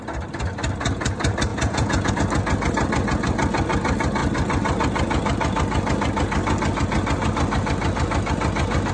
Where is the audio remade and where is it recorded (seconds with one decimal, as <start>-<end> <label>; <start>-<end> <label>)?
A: 0.0-1.5 recorded; 1.5-2.1 remade; 2.1-8.9 recorded